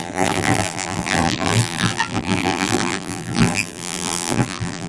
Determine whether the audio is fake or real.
fake